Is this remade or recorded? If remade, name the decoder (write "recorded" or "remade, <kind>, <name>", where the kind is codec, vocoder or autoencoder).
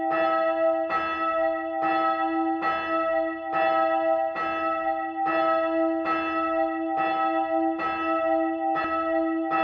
recorded